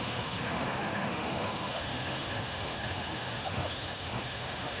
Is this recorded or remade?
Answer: remade